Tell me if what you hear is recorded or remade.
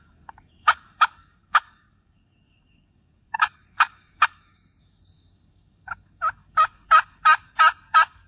remade